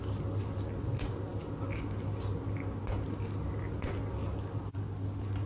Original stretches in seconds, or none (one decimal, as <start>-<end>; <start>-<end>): 0.0-5.5